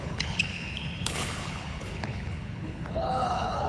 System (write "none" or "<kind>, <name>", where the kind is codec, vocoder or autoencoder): codec, HILCodec